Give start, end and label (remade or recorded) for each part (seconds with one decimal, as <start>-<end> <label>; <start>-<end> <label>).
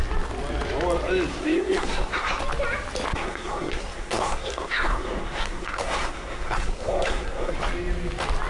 0.0-1.3 recorded; 1.3-2.4 remade; 2.4-3.1 recorded; 3.1-7.5 remade; 7.5-8.5 recorded